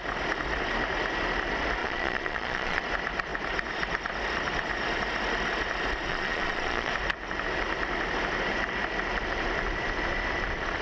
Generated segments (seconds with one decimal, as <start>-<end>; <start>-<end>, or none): 1.8-2.8; 6.1-6.9